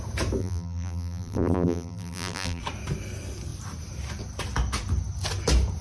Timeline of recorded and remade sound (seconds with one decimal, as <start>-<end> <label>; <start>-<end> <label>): 0.0-0.4 recorded; 0.4-2.6 remade; 2.6-5.8 recorded